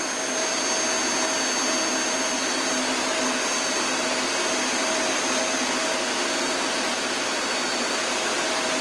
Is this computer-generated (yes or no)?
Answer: no